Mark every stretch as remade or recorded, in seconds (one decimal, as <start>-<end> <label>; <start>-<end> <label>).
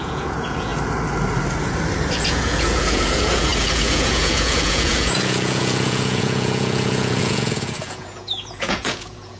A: 0.0-0.7 remade; 0.7-2.1 recorded; 2.1-9.4 remade